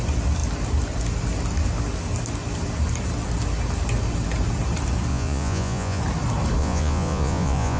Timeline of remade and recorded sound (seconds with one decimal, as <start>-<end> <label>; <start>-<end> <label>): 0.0-5.1 recorded; 5.1-6.0 remade; 6.0-6.6 recorded; 6.6-7.8 remade